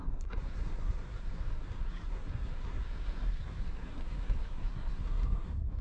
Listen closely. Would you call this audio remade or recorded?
remade